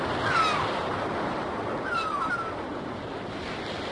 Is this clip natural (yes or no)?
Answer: yes